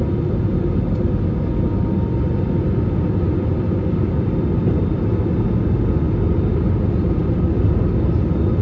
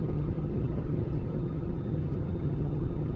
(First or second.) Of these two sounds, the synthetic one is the second